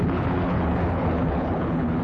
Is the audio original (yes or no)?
no